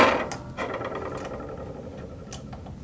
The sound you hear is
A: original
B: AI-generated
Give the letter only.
A